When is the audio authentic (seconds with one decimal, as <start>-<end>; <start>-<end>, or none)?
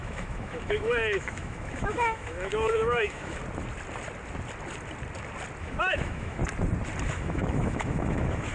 3.4-5.6; 6.4-7.1